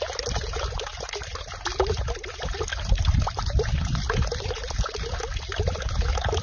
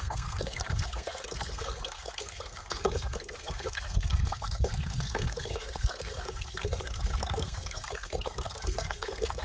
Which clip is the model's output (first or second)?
second